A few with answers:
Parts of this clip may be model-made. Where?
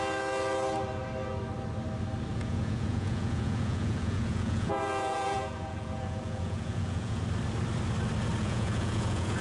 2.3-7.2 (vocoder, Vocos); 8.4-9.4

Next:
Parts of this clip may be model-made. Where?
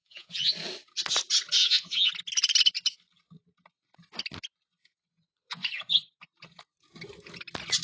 0.0-0.5 (vocoder, Vocos); 1.6-2.1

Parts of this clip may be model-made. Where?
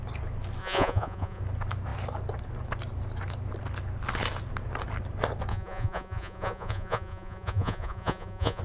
0.6-1.4 (vocoder, Vocos); 5.5-8.6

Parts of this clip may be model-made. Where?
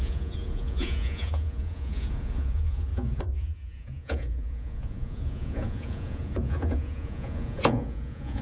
0.0-8.4 (vocoder, Vocos)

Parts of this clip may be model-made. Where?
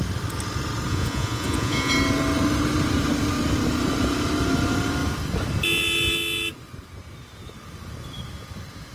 0.9-1.9 (vocoder, Vocos)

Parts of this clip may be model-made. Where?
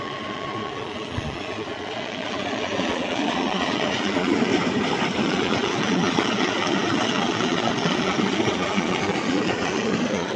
0.0-4.5 (vocoder, Vocos); 5.2-10.4